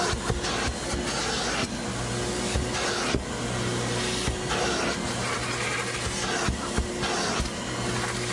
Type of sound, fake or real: real